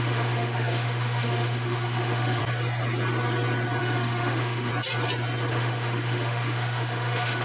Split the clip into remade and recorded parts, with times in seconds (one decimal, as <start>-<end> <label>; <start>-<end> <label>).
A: 0.0-2.4 remade; 2.4-3.8 recorded; 3.8-4.7 remade; 4.7-5.5 recorded; 5.5-7.4 remade